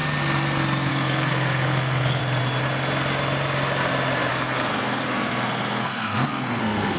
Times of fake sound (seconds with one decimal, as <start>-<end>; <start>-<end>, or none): 0.9-2.2; 4.3-7.0